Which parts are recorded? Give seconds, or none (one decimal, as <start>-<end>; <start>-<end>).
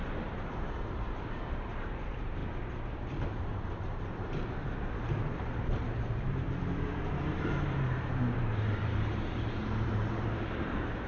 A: 2.4-3.3